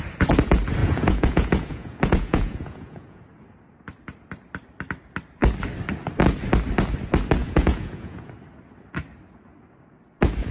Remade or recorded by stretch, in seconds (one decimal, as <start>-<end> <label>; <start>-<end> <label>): 0.0-0.8 recorded; 0.8-3.2 remade; 3.2-7.4 recorded; 7.4-8.3 remade; 8.3-10.5 recorded